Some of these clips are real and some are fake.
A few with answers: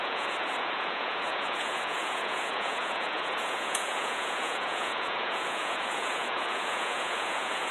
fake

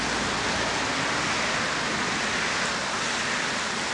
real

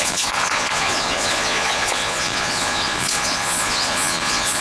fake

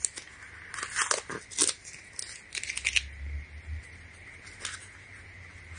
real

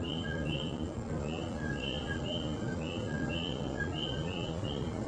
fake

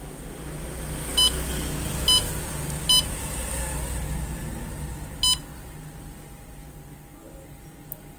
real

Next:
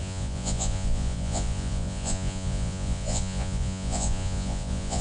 fake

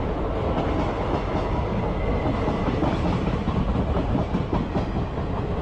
real